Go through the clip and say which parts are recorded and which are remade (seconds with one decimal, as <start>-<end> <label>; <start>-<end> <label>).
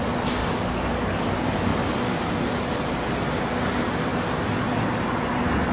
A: 0.0-0.4 recorded; 0.4-0.9 remade; 0.9-5.7 recorded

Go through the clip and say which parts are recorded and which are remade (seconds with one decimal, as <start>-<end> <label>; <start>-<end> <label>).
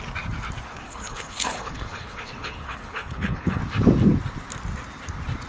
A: 0.0-0.7 recorded; 0.7-3.6 remade; 3.6-5.5 recorded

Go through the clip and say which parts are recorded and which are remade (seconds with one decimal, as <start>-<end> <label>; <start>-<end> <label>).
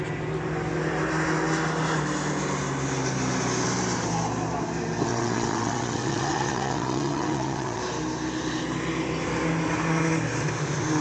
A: 0.0-5.1 recorded; 5.1-7.8 remade; 7.8-11.0 recorded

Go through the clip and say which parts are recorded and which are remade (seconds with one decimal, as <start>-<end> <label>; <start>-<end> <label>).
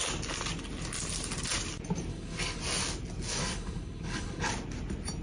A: 0.0-2.1 recorded; 2.1-2.6 remade; 2.6-3.4 recorded; 3.4-4.5 remade; 4.5-5.2 recorded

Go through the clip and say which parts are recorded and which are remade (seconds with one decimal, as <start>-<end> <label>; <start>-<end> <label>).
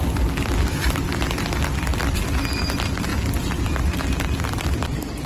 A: 0.0-5.3 recorded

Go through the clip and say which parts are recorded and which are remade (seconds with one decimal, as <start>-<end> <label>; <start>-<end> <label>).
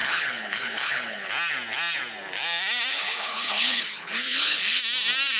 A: 0.0-1.3 remade; 1.3-2.9 recorded; 2.9-4.8 remade; 4.8-5.4 recorded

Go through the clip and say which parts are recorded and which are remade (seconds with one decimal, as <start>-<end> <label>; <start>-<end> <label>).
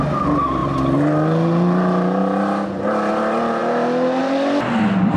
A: 0.0-5.2 recorded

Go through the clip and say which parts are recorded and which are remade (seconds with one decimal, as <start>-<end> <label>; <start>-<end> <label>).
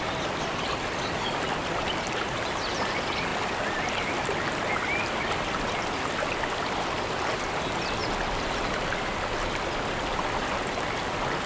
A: 0.0-11.5 recorded